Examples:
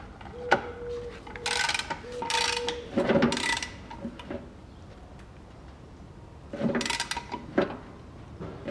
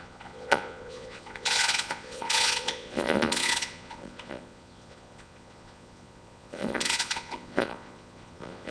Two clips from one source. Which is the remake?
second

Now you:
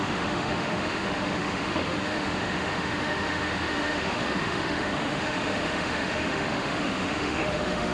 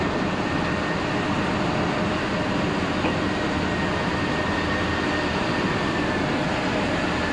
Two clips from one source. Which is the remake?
first